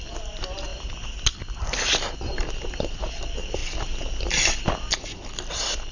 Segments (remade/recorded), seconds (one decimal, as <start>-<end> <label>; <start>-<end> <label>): 0.0-5.9 recorded